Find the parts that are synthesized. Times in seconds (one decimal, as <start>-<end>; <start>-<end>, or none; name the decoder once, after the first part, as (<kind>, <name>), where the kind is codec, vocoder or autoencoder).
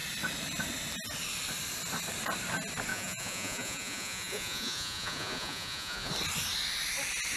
2.9-6.1 (vocoder, Vocos)